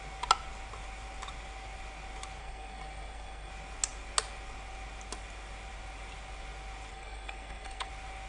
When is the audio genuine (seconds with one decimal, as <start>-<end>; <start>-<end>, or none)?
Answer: 0.0-2.4; 3.5-6.9; 7.9-8.3